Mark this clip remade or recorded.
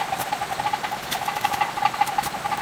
recorded